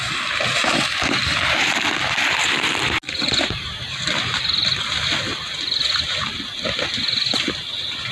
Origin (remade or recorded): recorded